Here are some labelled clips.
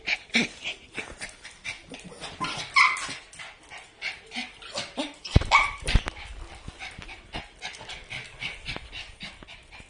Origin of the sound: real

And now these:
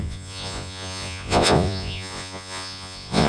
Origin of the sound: fake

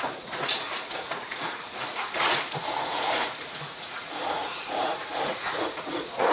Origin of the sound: fake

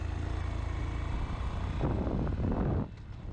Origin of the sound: real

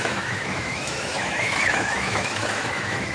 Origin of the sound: fake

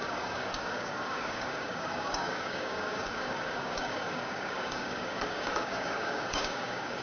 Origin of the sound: fake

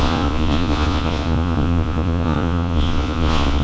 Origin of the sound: fake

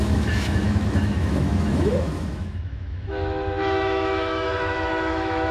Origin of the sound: fake